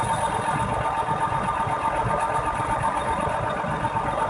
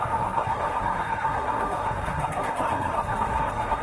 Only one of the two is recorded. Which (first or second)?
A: first